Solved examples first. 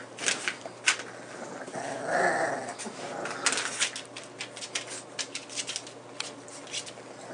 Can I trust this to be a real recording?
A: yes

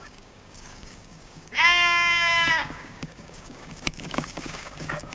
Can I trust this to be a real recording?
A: no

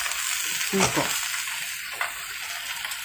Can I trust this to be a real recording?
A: yes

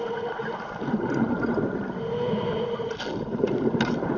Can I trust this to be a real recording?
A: yes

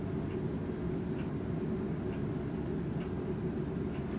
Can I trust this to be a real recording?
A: yes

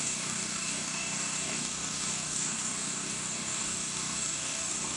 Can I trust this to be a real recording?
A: no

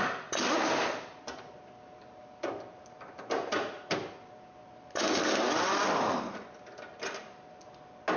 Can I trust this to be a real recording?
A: yes